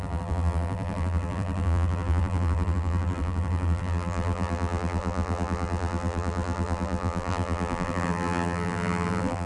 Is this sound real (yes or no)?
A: no